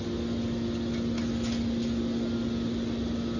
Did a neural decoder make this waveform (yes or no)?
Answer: no